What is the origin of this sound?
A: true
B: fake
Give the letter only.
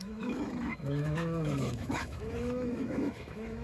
B